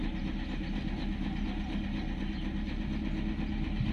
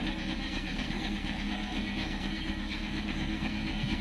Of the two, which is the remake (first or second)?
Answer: second